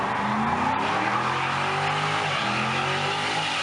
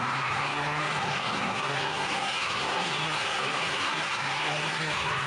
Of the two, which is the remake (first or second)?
second